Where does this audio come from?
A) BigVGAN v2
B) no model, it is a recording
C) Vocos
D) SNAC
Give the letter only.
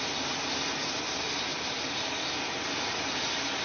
B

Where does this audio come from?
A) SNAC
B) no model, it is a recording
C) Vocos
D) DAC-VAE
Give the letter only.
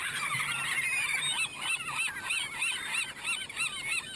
B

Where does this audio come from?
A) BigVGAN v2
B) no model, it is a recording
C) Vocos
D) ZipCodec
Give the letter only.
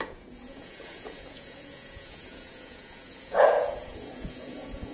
C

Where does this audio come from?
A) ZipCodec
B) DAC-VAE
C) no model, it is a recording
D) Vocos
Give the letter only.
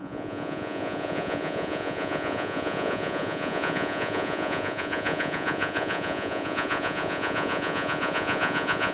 D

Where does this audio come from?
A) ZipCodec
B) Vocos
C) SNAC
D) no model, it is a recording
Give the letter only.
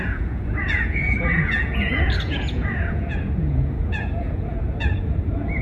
B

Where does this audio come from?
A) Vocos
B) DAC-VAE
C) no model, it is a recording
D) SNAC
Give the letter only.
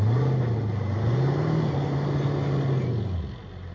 C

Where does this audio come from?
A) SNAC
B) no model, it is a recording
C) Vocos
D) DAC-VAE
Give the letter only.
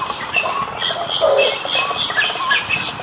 B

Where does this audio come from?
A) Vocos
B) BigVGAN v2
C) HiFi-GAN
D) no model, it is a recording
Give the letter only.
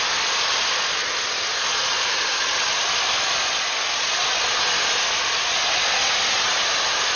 D